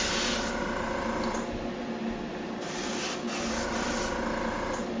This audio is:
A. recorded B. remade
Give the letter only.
A